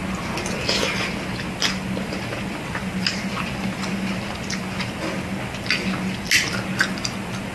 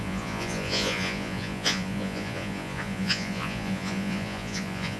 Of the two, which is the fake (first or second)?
second